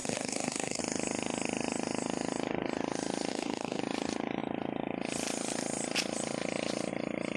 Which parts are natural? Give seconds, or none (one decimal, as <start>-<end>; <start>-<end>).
0.8-3.3; 3.8-7.4